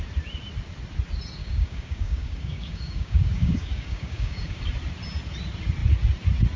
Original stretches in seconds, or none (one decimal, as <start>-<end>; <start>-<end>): 0.0-1.4; 4.6-6.6